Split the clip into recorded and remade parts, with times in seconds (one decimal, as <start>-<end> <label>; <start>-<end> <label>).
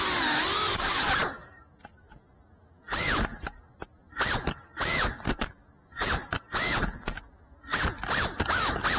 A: 0.0-9.0 recorded